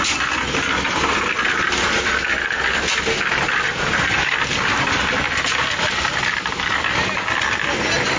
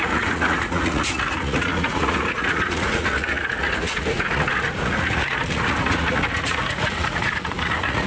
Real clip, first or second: first